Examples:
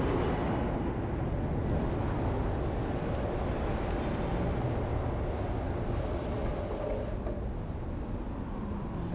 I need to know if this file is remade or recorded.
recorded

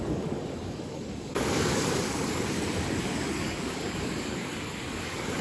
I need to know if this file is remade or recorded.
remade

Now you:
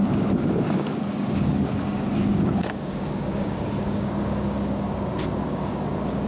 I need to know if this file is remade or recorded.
remade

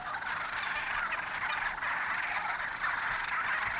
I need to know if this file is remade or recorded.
recorded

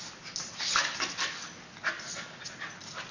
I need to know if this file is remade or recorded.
recorded